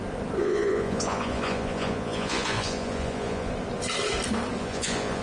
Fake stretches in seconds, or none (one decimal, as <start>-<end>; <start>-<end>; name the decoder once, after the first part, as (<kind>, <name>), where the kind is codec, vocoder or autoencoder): 0.4-3.5 (vocoder, Vocos); 4.6-5.2